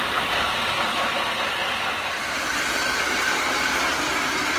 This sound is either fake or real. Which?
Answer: fake